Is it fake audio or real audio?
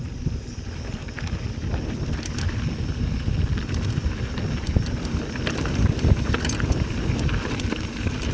real